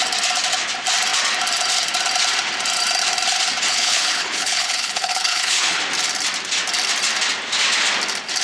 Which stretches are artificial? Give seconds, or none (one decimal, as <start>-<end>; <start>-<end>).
3.7-5.8